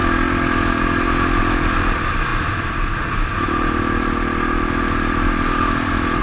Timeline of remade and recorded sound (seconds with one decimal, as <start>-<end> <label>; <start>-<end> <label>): 0.0-6.2 recorded